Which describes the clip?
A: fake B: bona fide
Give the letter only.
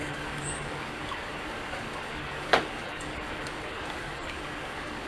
A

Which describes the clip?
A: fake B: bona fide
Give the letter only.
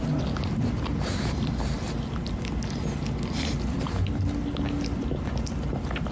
B